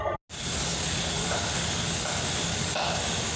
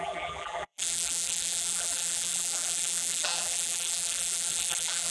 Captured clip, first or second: first